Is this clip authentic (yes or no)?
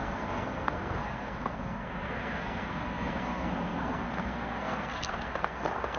no